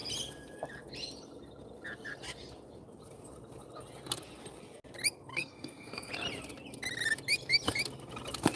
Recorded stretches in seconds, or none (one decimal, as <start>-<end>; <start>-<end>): 0.0-5.3; 6.1-8.6